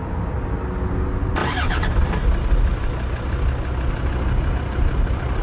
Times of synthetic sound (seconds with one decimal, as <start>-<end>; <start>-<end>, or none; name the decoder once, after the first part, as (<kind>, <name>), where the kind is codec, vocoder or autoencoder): none